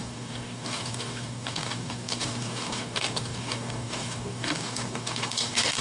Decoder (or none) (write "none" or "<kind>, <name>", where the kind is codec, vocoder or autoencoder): codec, DAC